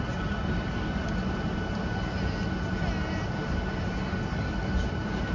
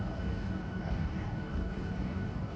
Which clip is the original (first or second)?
first